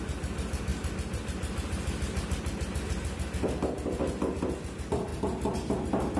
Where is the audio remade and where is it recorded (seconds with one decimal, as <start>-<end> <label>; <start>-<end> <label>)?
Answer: 0.0-6.2 recorded